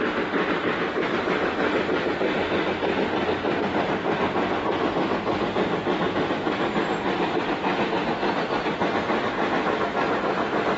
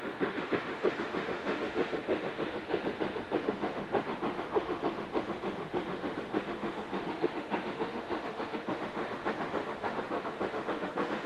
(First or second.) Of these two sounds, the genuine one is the first